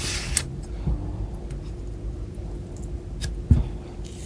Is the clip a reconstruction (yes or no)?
no